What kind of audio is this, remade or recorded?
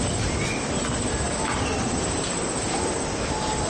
recorded